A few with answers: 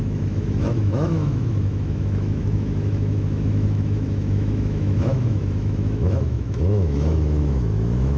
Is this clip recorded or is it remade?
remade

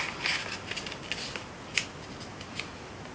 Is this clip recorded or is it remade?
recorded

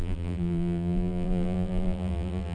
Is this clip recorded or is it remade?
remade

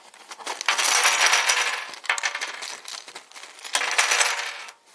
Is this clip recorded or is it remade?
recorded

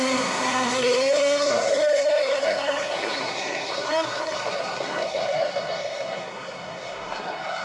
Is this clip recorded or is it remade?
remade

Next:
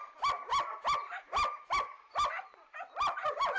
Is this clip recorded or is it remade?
recorded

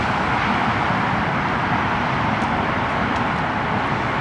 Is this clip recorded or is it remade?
recorded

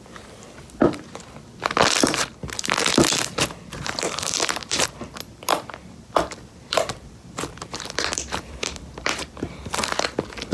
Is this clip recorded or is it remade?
remade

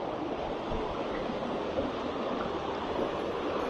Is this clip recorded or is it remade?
recorded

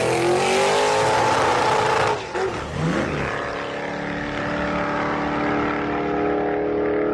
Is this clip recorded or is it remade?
recorded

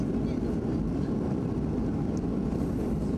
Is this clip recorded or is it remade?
recorded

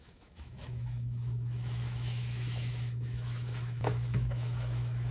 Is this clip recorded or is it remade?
remade